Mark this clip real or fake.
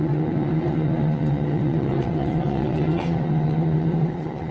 fake